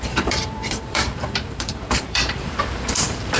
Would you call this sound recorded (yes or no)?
no